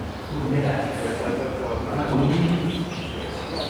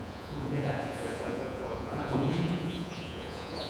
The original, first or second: first